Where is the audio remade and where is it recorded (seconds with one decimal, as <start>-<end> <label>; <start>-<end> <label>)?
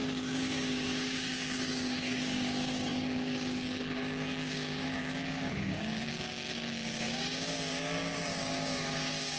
0.0-9.4 remade